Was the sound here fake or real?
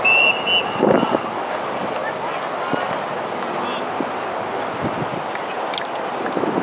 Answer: real